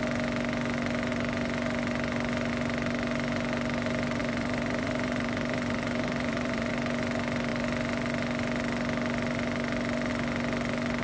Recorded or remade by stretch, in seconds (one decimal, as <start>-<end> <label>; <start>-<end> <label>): 0.0-4.2 recorded; 4.2-6.7 remade; 6.7-11.0 recorded